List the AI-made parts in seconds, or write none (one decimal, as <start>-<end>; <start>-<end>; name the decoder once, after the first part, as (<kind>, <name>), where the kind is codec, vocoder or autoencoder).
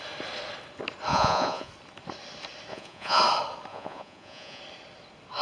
1.1-1.7 (vocoder, Vocos); 2.7-3.2; 3.7-4.6